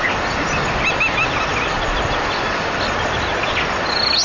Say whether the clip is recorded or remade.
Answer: recorded